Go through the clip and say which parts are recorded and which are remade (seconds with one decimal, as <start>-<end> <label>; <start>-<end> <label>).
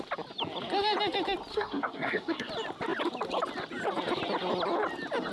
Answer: 0.0-1.5 recorded; 1.5-2.5 remade; 2.5-5.3 recorded